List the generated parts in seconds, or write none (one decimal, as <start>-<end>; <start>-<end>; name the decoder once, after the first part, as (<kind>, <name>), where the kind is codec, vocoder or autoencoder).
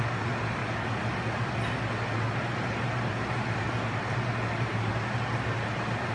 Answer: 0.0-0.6 (vocoder, BigVGAN v2); 1.9-6.1